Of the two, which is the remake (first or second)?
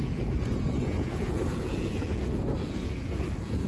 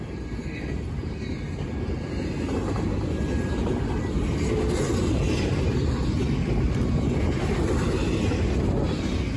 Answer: first